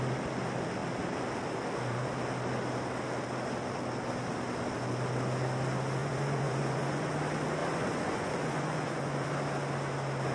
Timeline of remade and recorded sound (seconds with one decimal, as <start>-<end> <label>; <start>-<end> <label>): 0.0-6.0 recorded; 6.0-7.1 remade; 7.1-7.6 recorded; 7.6-9.3 remade; 9.3-10.3 recorded